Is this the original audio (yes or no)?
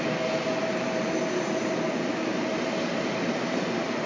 yes